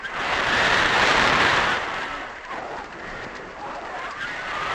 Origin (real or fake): fake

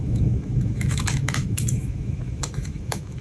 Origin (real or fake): fake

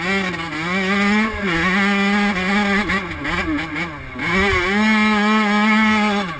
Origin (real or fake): real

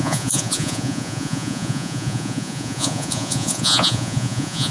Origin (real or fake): fake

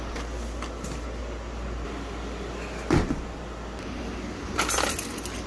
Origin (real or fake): real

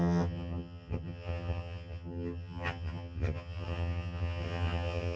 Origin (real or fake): fake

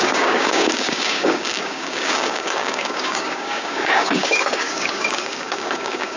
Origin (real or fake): fake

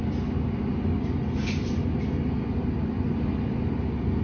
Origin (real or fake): real